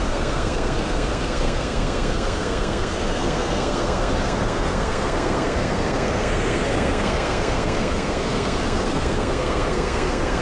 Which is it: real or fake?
fake